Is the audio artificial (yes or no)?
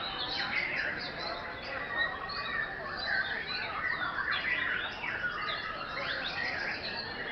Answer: no